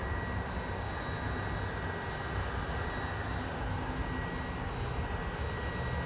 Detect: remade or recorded recorded